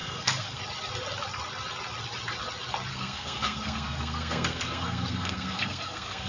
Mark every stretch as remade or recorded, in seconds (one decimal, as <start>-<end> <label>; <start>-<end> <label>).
0.0-0.6 remade; 0.6-2.9 recorded; 2.9-6.3 remade

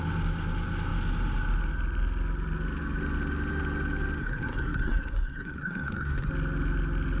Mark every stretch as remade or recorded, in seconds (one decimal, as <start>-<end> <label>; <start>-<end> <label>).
0.0-4.2 recorded; 4.2-6.3 remade; 6.3-7.2 recorded